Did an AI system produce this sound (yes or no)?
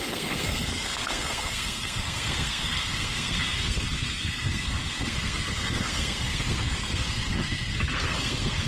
yes